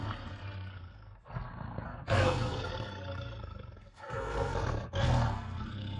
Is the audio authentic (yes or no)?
no